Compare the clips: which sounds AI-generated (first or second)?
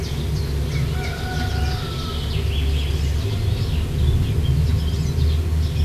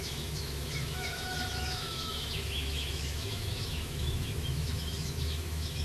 second